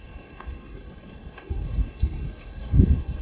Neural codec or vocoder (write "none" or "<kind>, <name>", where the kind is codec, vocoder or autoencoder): codec, SNAC